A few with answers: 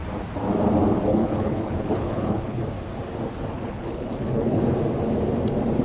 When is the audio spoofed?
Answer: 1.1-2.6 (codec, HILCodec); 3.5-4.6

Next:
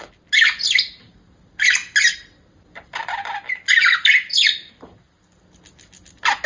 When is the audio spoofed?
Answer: none

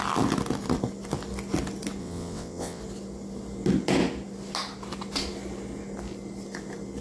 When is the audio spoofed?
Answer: 2.0-2.8 (vocoder, WaveNeXt)

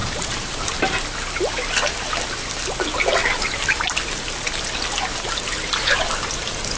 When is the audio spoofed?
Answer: 0.0-0.6 (vocoder, BigVGAN v2); 3.2-4.6; 5.1-6.3